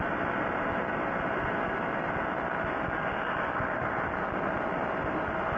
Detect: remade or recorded recorded